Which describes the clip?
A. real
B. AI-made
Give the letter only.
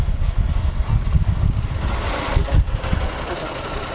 A